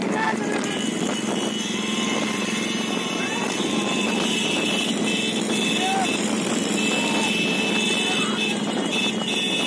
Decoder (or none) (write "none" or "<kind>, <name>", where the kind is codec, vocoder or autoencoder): none